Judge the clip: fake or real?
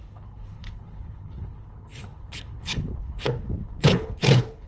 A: fake